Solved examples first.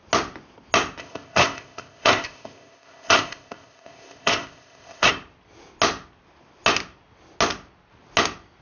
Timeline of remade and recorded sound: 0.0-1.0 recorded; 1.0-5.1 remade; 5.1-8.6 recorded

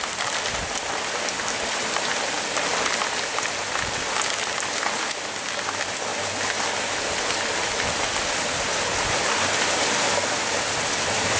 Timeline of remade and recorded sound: 0.0-11.4 recorded

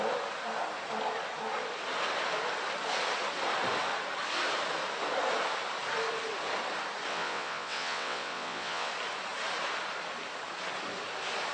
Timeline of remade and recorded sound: 0.0-7.1 recorded; 7.1-8.9 remade; 8.9-11.5 recorded